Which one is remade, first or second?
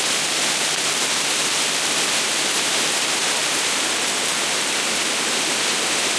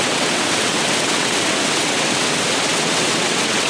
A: second